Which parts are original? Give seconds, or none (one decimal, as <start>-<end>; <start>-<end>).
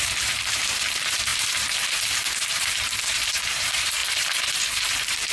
none